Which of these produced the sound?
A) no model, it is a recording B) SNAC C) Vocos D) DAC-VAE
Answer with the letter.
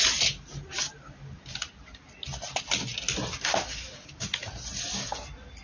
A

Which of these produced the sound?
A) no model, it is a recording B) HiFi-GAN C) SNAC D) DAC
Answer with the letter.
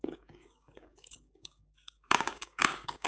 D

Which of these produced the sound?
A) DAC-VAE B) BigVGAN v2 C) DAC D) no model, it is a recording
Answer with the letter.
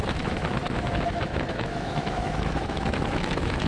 A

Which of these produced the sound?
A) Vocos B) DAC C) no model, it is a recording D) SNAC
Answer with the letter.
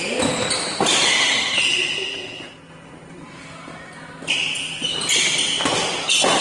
C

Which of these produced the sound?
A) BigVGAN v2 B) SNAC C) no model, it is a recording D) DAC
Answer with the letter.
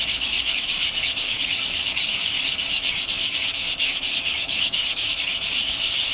D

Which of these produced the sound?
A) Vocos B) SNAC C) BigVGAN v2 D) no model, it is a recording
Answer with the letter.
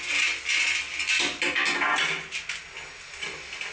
D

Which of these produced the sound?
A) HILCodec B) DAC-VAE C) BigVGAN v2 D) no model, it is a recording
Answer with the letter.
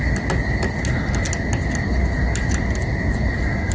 D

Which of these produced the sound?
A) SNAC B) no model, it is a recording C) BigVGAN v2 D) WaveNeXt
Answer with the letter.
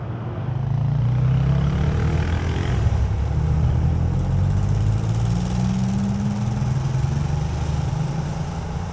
B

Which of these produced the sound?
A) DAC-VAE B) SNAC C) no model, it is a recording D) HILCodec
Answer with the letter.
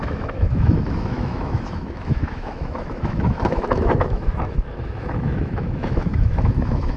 A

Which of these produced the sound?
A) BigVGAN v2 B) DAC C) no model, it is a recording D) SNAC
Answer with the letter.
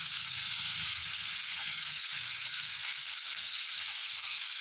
D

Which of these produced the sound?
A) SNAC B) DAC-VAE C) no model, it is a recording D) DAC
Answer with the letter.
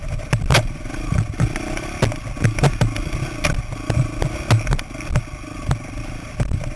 C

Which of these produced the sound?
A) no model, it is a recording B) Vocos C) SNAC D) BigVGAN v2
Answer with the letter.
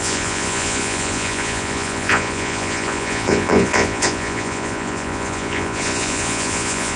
B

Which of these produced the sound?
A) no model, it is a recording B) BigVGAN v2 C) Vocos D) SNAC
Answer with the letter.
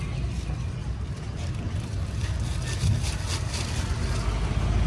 A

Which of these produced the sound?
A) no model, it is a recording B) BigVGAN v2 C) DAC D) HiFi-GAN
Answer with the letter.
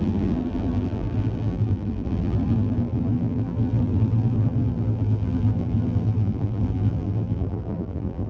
B